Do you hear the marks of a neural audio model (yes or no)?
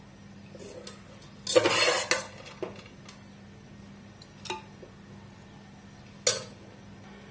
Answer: no